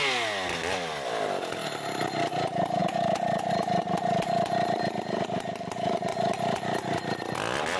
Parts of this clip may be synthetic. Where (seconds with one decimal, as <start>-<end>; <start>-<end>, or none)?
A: 2.8-3.5; 6.1-7.2